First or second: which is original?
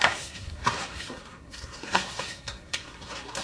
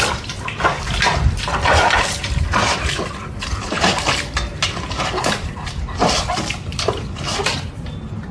second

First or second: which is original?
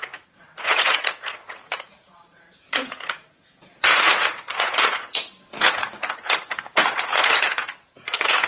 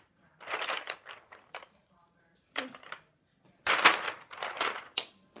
second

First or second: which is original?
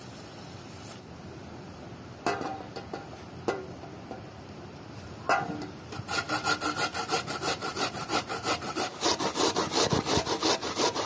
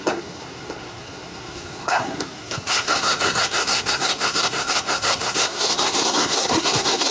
first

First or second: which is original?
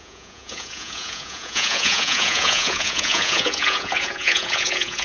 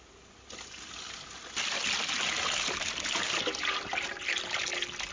second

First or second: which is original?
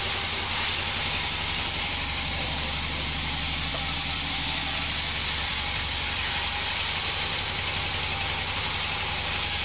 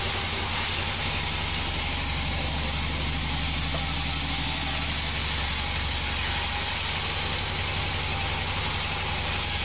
second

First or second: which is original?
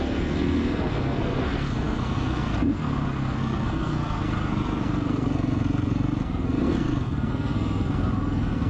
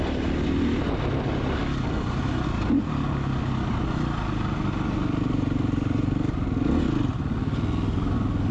second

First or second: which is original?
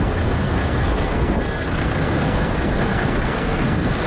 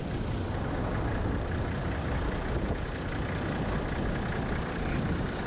second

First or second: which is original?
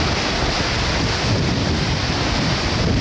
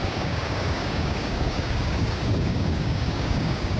first